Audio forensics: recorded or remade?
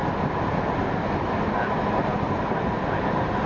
recorded